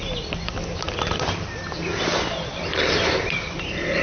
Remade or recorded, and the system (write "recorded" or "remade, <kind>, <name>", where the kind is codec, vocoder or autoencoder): recorded